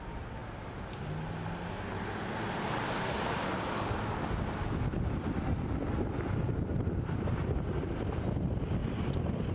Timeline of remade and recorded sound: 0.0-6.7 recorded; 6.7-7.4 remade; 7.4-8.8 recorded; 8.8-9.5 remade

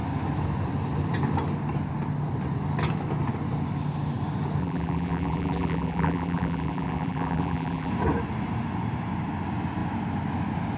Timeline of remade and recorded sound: 0.0-4.6 recorded; 4.6-7.9 remade; 7.9-10.8 recorded